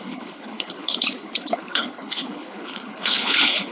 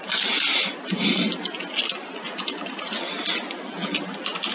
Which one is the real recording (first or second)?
second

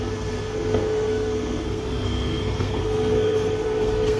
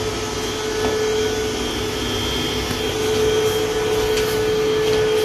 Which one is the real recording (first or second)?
second